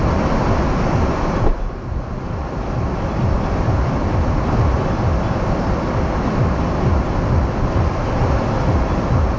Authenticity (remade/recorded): recorded